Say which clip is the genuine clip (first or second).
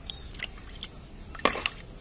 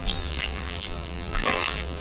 first